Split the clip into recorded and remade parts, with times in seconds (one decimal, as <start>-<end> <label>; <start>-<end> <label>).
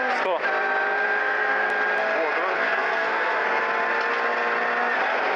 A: 0.0-1.2 recorded; 1.2-1.7 remade; 1.7-2.5 recorded; 2.5-3.6 remade; 3.6-5.4 recorded